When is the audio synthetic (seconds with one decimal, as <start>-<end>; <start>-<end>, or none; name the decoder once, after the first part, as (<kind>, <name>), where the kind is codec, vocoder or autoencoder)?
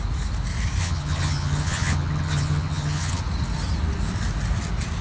0.8-3.2 (vocoder, HiFi-GAN)